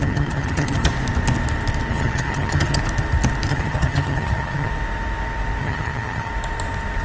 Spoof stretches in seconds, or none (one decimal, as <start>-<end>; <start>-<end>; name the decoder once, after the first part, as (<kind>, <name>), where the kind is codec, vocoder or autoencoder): 0.0-0.9 (vocoder, HiFi-GAN); 1.9-2.8; 3.5-4.7; 5.6-6.3